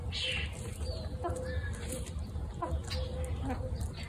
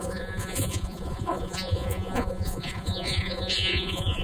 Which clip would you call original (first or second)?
first